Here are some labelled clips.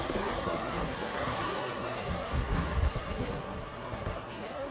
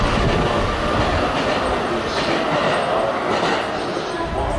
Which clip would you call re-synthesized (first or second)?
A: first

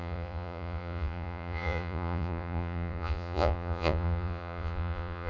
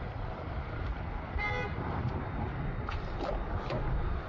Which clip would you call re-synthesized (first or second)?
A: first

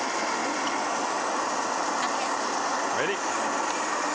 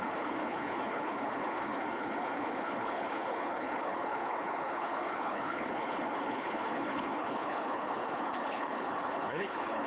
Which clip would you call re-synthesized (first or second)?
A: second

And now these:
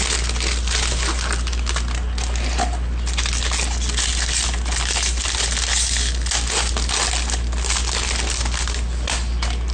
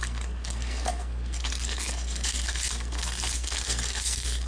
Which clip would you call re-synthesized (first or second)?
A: second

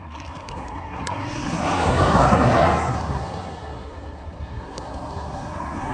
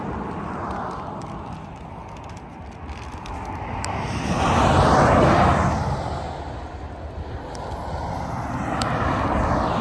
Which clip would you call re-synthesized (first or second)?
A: first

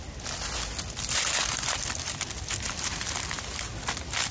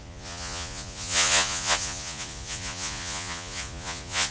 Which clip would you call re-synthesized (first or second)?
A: second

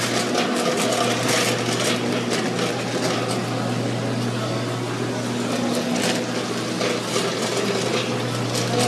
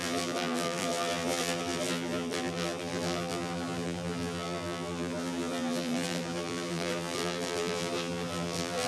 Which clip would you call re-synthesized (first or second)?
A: second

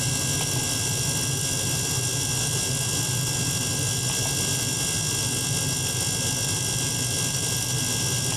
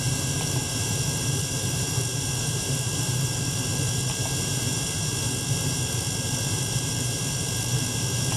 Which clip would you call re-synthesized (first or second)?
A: second